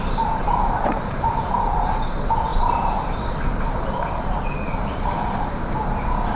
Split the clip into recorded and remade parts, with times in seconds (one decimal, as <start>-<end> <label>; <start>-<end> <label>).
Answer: 0.0-6.4 remade